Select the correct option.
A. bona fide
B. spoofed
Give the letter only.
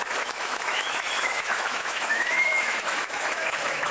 B